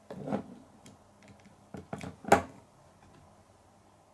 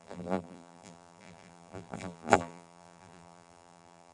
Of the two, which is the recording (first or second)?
first